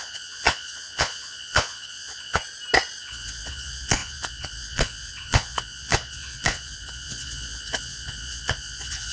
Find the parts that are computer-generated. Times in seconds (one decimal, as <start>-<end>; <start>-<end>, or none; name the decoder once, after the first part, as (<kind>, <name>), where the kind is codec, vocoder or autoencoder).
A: 0.0-2.4 (vocoder, Vocos); 3.0-9.1